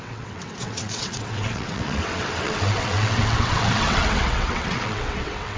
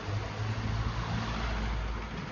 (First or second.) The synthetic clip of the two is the first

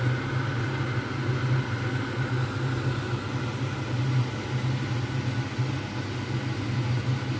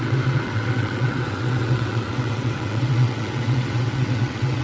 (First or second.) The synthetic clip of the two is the second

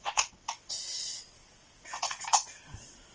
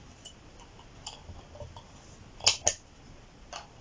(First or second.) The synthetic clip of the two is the first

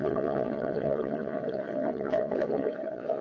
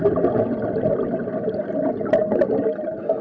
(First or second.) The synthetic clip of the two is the first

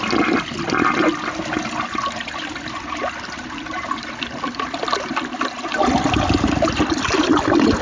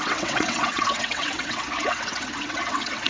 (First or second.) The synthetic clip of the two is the second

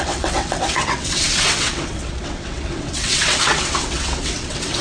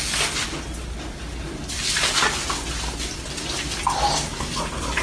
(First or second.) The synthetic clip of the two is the first